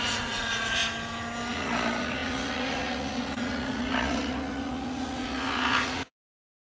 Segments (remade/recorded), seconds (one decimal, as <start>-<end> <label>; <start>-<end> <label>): 0.0-0.8 remade; 0.8-1.5 recorded; 1.5-6.7 remade